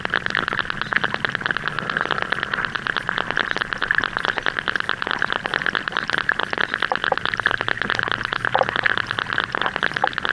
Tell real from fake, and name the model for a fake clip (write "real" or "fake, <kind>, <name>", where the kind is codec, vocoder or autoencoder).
real